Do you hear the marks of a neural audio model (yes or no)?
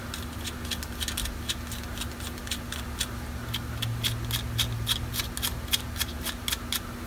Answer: no